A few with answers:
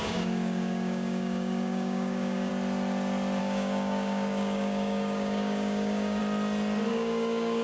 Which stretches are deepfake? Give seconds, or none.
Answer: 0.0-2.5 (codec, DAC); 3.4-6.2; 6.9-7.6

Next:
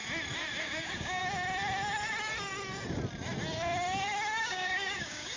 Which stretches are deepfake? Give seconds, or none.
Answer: 0.6-1.2 (codec, DAC); 4.4-5.4

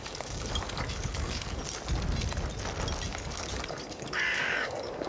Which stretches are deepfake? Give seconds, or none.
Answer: 0.0-1.6 (codec, DAC); 3.1-5.1

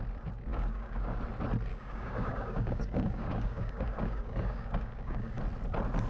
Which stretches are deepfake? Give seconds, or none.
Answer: 0.5-1.2 (codec, DAC); 1.7-5.4

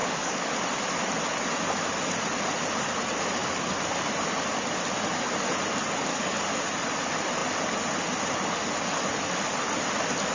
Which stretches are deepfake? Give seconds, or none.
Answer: 0.0-0.5 (codec, DAC); 6.1-6.6